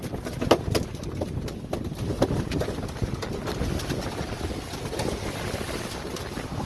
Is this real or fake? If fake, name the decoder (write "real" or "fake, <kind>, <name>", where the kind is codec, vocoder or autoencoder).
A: real